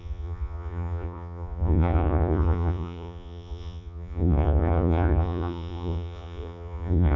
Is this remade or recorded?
remade